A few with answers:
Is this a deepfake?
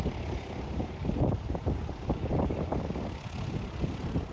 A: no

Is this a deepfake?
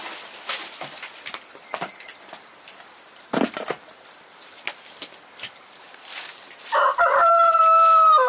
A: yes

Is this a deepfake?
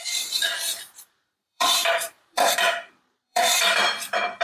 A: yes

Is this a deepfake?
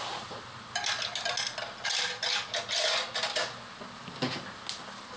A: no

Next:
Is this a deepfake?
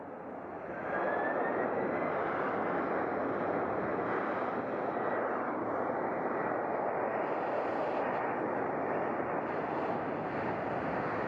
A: no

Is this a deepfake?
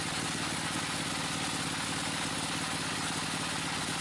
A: no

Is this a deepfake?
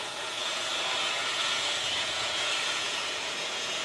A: yes